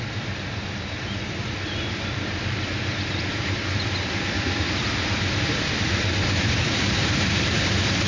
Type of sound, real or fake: fake